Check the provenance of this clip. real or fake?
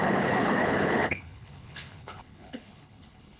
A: fake